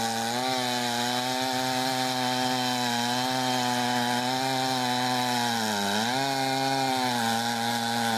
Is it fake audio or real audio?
real